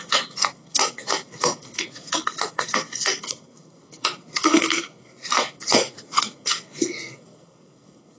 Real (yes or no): no